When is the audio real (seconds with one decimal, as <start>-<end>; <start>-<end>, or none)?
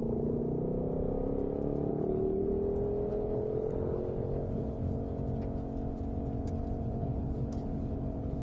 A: 0.4-1.9; 2.5-3.1; 5.0-6.8